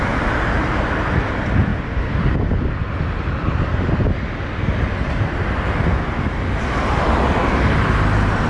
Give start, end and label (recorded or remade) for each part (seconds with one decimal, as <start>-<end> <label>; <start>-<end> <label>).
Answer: 0.0-8.5 recorded

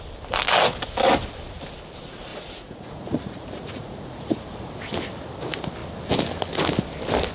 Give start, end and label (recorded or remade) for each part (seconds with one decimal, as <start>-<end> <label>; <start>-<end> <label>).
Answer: 0.0-2.3 recorded; 2.3-4.7 remade; 4.7-7.3 recorded

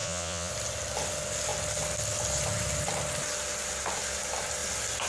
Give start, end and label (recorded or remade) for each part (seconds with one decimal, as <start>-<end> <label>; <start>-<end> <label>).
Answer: 0.0-0.5 remade; 0.5-5.1 recorded

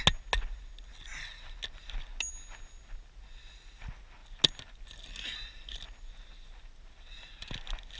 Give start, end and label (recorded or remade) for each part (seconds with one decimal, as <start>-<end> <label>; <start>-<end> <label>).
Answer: 0.0-8.0 recorded

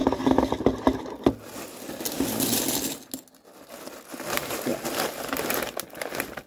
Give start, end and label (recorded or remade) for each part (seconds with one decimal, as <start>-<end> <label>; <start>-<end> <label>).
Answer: 0.0-6.5 recorded

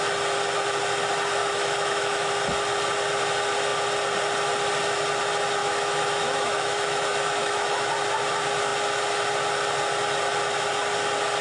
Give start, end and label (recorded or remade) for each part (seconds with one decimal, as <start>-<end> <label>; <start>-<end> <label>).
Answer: 0.0-1.4 recorded; 1.4-2.3 remade; 2.3-5.6 recorded; 5.6-7.9 remade; 7.9-11.4 recorded

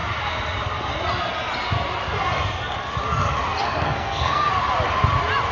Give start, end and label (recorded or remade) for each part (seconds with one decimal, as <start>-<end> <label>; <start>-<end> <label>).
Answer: 0.0-3.6 recorded; 3.6-4.5 remade; 4.5-5.5 recorded